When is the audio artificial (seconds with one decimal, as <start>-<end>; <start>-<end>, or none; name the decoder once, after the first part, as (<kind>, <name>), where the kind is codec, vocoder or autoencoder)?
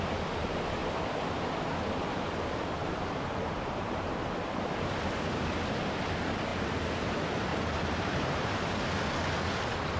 2.8-4.0 (vocoder, BigVGAN v2); 7.5-9.0